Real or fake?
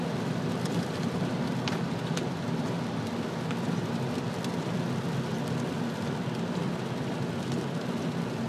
real